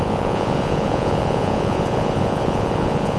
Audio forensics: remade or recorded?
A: remade